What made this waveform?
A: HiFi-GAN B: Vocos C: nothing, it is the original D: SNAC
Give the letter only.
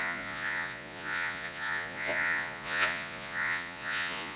B